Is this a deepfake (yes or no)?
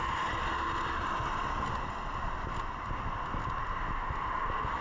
no